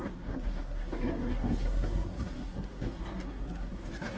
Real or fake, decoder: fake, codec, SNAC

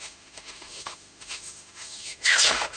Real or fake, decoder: fake, autoencoder, DAC-VAE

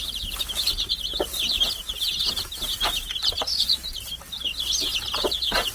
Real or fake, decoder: real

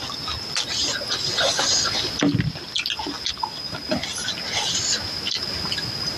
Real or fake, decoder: real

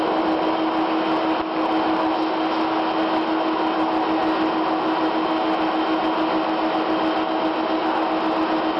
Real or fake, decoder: real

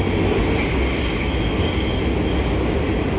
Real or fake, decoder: real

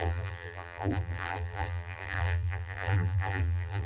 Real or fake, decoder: fake, vocoder, BigVGAN v2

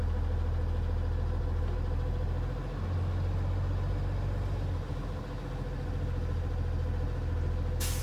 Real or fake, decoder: real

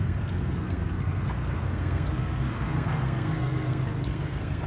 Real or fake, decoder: fake, codec, SNAC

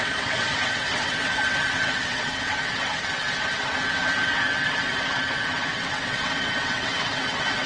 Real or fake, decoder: fake, vocoder, WaveNeXt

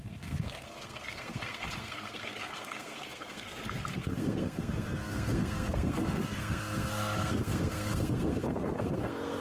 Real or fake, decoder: fake, codec, SNAC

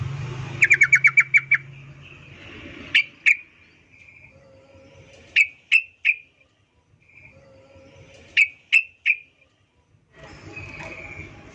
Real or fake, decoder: real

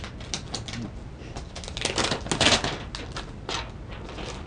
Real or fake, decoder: real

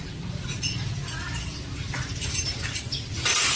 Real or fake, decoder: real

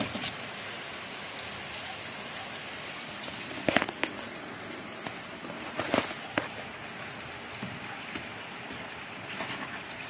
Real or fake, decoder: real